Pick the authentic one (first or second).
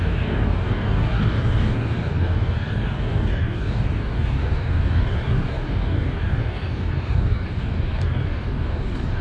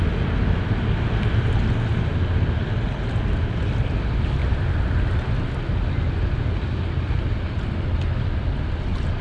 second